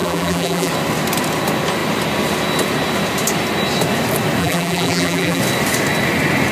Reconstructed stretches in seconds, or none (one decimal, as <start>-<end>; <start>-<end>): 0.0-0.7; 4.4-5.4